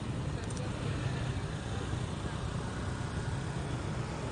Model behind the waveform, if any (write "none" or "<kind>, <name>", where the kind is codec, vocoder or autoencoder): none